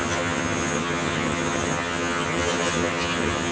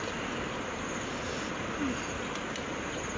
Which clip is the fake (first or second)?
first